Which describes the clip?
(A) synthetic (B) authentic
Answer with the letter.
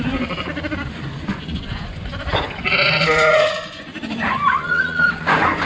A